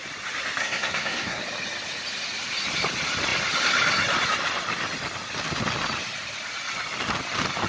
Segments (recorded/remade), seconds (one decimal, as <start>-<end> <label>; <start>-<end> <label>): 0.0-0.6 recorded; 0.6-1.4 remade; 1.4-7.7 recorded